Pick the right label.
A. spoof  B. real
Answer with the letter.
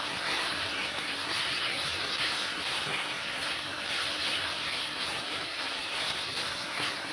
A